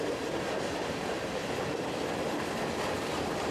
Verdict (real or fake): fake